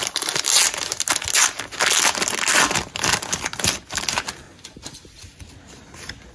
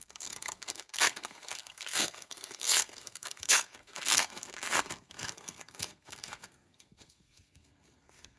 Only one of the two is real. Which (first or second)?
first